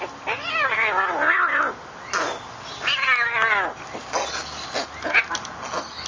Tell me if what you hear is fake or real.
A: real